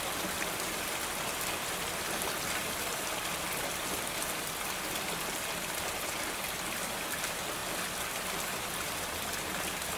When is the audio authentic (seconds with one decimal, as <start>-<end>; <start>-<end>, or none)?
0.0-10.0